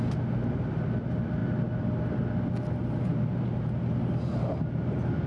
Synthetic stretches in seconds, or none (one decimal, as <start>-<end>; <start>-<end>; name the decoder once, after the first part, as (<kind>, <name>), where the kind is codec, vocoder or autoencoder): none